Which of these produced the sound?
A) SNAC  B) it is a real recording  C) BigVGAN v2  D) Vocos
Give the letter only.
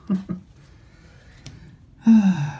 D